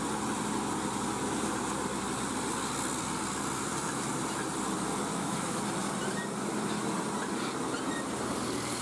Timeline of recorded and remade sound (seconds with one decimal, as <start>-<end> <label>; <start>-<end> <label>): 0.0-5.1 recorded; 5.1-5.6 remade; 5.6-8.8 recorded